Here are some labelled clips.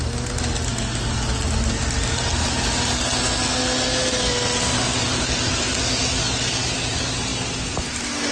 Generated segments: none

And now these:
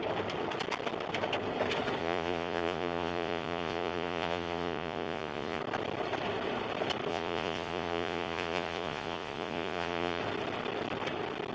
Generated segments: 2.0-5.6 (vocoder, Vocos); 7.1-10.2

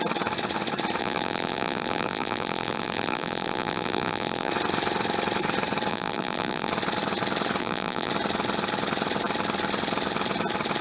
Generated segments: 1.0-4.5 (vocoder, BigVGAN v2); 5.9-6.7; 7.6-8.1